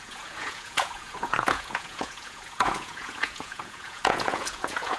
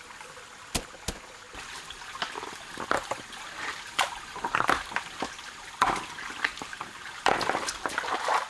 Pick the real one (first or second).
second